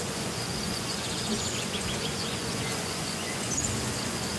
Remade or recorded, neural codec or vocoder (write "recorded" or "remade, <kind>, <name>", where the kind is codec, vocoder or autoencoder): remade, vocoder, Vocos